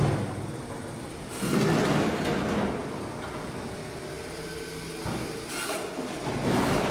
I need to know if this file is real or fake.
real